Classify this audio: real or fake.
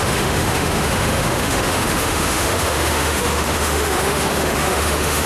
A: fake